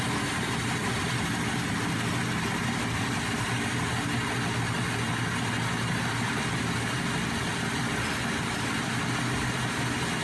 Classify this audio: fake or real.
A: real